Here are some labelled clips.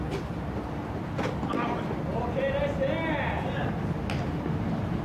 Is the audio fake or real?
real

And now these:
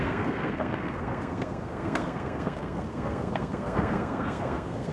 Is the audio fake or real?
fake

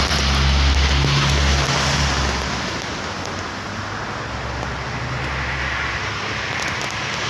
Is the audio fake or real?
real